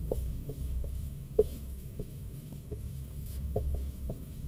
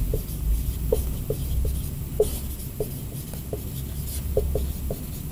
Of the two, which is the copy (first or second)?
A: first